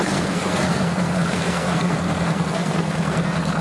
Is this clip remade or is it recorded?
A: remade